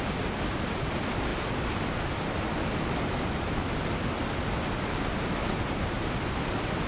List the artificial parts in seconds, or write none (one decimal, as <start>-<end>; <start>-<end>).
none